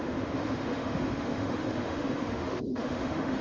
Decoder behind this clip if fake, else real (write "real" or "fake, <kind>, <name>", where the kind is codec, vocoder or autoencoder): fake, autoencoder, DAC-VAE